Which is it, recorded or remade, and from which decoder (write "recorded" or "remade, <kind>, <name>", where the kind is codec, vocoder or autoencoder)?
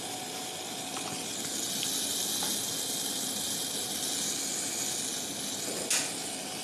recorded